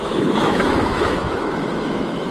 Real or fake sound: fake